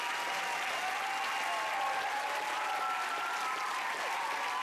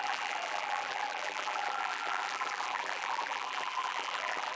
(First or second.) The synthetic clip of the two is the second